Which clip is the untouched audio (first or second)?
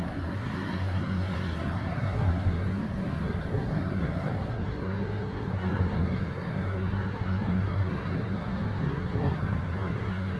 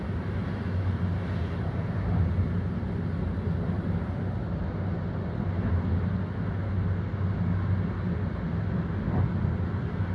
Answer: second